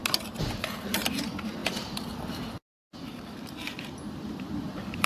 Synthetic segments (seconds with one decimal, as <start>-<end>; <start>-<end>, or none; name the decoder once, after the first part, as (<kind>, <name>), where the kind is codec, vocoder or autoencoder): 1.6-5.1 (vocoder, BigVGAN v2)